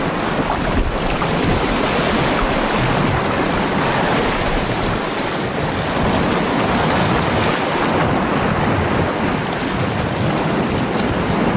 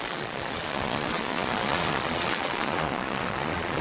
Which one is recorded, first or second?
first